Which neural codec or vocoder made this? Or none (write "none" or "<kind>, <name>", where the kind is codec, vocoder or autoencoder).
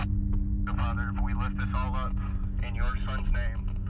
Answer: none